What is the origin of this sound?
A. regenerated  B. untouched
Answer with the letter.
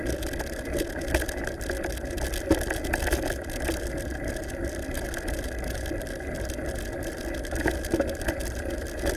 B